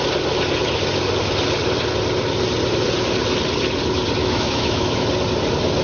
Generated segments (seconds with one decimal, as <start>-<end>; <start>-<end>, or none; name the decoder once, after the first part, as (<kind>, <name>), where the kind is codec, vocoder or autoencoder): 4.2-5.1 (autoencoder, DAC-VAE)